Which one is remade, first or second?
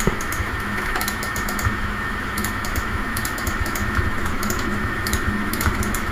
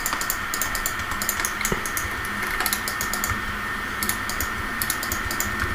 first